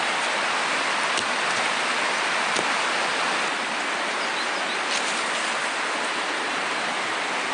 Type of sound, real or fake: fake